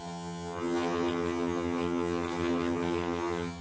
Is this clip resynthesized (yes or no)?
yes